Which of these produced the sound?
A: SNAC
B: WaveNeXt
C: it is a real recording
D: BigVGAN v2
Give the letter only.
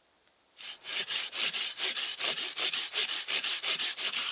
C